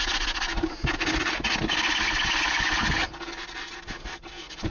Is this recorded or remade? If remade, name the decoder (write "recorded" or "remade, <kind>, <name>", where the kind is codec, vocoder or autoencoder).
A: recorded